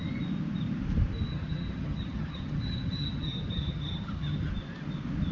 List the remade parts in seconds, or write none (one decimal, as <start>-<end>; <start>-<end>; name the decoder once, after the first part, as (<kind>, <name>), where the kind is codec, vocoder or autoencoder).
1.3-4.5 (vocoder, HiFi-GAN)